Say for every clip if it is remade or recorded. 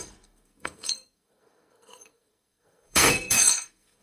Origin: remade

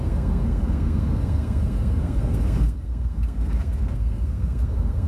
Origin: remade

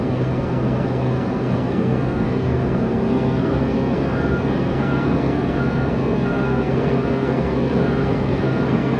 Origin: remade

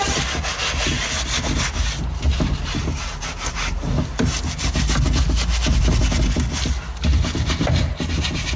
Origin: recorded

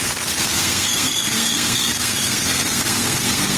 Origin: remade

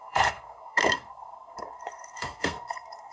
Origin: remade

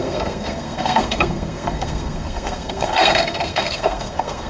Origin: remade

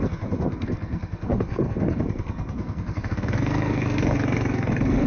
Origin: remade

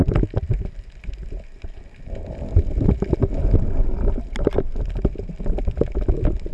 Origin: recorded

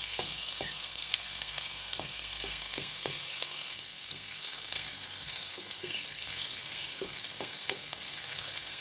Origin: remade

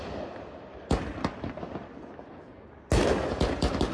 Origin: recorded